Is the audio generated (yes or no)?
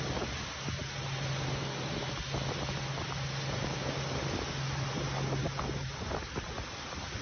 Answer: no